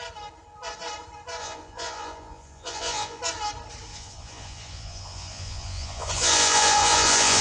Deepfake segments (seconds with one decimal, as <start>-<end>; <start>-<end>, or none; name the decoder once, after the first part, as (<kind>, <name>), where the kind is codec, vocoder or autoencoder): 1.4-3.2 (vocoder, Vocos); 3.9-7.4

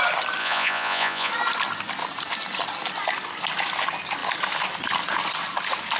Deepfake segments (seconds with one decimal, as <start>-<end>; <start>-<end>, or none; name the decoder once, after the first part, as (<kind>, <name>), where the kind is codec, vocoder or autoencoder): 0.4-1.3 (vocoder, Vocos)

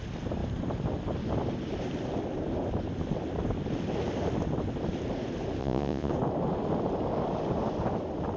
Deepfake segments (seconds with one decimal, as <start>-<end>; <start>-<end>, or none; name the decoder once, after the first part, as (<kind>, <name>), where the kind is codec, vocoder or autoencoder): 5.6-6.1 (vocoder, Vocos)

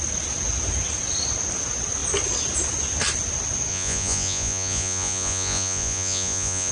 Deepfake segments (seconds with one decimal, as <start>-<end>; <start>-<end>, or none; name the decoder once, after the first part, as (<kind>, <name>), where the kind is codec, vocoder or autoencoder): 3.7-6.7 (vocoder, Vocos)

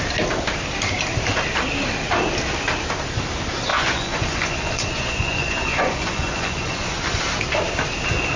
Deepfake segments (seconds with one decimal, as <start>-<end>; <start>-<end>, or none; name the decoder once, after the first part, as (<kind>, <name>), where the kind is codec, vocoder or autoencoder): 3.7-7.2 (vocoder, Vocos)